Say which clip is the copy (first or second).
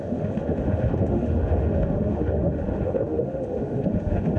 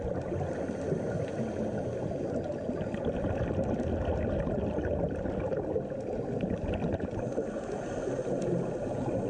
first